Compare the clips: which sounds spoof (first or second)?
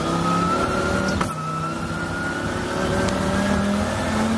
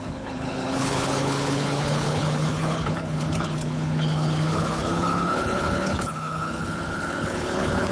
second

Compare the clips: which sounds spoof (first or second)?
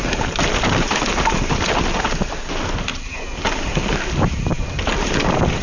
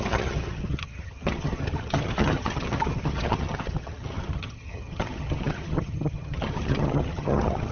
second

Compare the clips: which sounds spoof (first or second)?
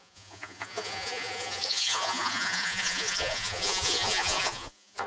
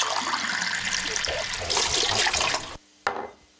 first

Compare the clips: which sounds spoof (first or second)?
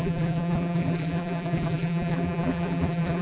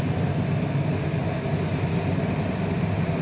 first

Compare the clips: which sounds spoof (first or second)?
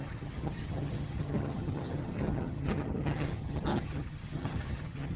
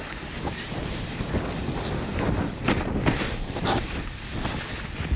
first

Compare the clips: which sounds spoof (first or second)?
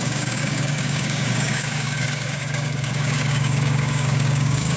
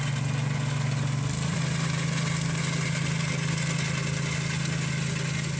first